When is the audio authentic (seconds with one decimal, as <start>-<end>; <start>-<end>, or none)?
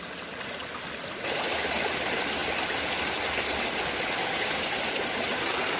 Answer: 0.0-4.2; 4.7-5.8